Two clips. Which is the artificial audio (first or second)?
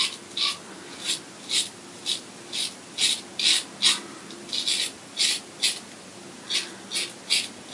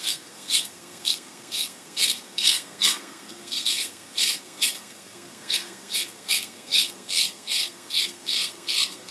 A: second